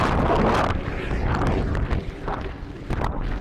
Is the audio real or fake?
real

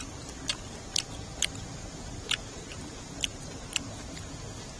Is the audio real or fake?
real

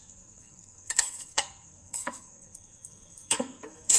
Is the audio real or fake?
fake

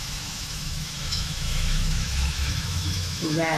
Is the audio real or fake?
fake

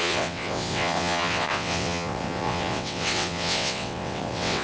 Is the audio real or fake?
fake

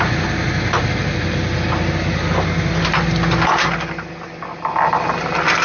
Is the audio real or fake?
real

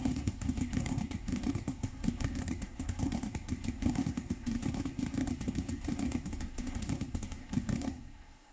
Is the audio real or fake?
fake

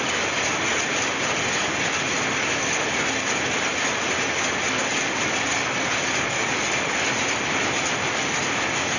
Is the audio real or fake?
real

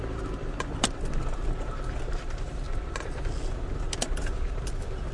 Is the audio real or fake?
real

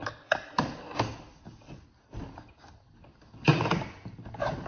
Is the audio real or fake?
real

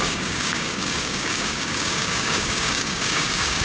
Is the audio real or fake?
fake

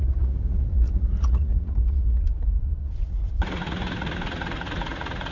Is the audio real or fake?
fake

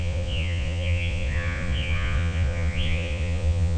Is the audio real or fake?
fake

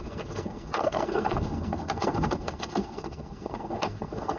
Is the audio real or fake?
fake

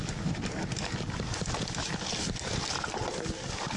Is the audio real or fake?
real